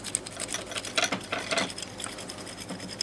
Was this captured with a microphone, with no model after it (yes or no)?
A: yes